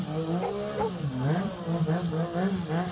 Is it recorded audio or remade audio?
recorded